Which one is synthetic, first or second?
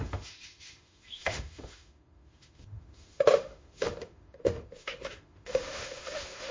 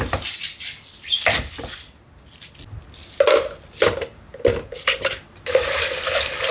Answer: first